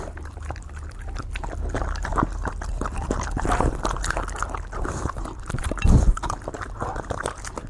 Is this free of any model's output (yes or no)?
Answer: yes